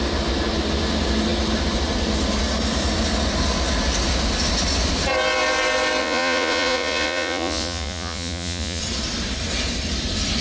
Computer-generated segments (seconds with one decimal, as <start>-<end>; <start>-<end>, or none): 6.0-8.8